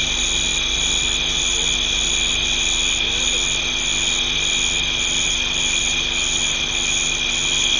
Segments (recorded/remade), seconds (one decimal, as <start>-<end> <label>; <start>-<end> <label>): 0.0-7.8 recorded